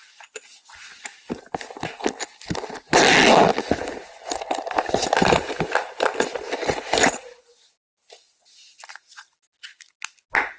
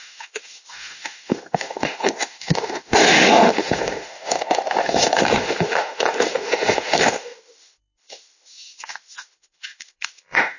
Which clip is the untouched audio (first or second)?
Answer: first